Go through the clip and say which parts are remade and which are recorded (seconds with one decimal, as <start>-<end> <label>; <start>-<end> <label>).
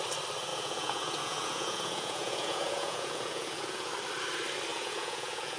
0.0-0.5 recorded; 0.5-3.9 remade; 3.9-4.7 recorded; 4.7-5.6 remade